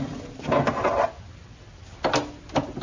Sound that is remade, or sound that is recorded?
recorded